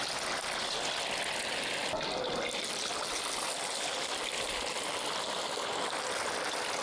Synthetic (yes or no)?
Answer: no